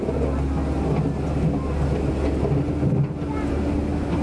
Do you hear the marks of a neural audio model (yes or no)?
no